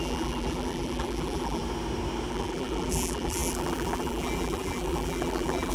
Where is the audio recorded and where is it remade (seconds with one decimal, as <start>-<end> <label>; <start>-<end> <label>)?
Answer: 0.0-1.6 remade; 1.6-2.3 recorded; 2.3-5.7 remade